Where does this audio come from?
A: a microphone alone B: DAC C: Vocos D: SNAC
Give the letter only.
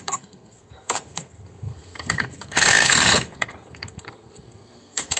D